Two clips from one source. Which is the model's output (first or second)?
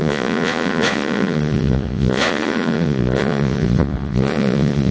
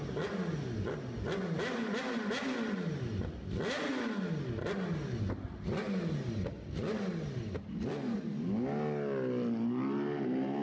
first